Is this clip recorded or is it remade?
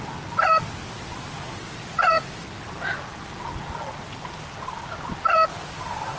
recorded